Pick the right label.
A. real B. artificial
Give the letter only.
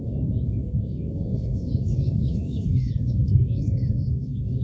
B